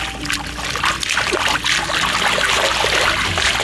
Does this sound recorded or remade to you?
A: recorded